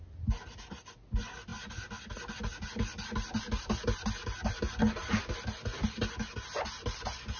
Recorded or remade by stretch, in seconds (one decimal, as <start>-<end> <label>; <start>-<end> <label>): 0.0-7.4 recorded